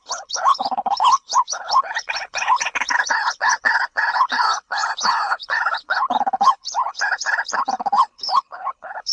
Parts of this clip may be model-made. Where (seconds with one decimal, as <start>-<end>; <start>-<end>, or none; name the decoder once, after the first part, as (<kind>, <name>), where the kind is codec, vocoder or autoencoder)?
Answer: 0.0-9.1 (codec, HILCodec)